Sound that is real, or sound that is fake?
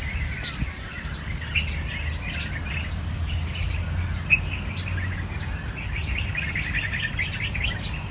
real